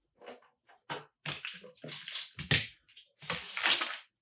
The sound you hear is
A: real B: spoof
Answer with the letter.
A